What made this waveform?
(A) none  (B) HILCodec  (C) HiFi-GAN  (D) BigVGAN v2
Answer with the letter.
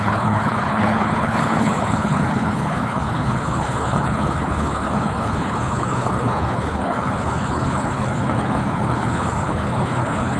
B